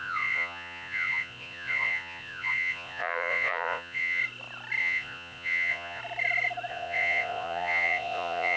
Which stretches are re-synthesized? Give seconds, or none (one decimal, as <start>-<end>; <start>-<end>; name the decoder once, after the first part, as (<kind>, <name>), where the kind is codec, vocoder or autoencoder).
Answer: 0.0-4.2 (vocoder, Vocos); 4.8-6.0; 6.7-8.6